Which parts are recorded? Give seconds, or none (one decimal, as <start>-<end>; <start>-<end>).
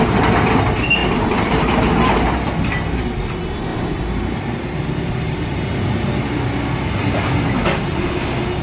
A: 0.0-1.0; 1.9-3.7; 6.4-8.6